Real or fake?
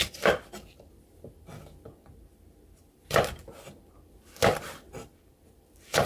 fake